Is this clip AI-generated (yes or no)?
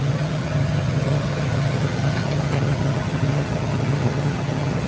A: yes